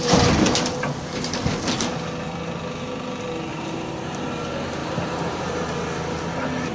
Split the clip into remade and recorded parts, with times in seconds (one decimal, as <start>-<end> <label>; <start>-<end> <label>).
0.0-3.5 recorded; 3.5-4.2 remade; 4.2-4.8 recorded; 4.8-5.5 remade; 5.5-6.7 recorded